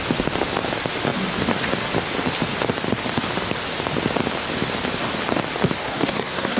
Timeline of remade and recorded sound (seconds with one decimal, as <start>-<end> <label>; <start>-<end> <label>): 0.0-5.8 recorded; 5.8-6.6 remade